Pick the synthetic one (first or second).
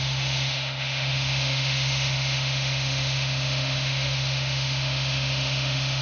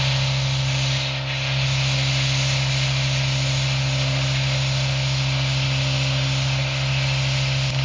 first